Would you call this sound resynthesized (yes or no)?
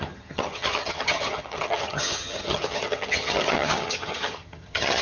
yes